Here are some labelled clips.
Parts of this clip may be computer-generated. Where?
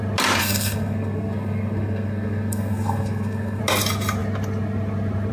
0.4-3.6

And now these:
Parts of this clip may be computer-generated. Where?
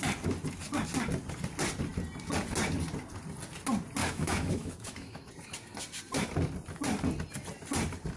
4.0-5.3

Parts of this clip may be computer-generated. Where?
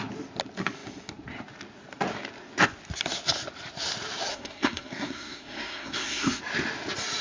4.3-6.4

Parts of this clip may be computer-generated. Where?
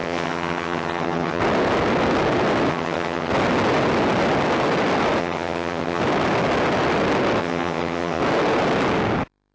0.0-1.4; 2.7-3.3; 5.2-6.0; 7.4-8.2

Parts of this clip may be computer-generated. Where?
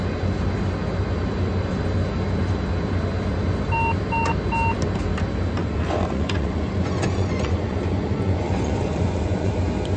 5.6-9.5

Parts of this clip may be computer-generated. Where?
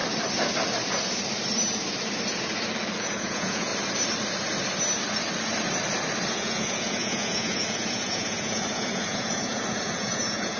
3.0-3.7; 6.3-10.6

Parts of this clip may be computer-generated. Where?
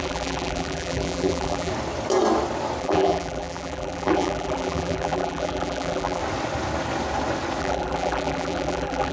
0.0-1.7; 2.8-6.2; 7.6-9.1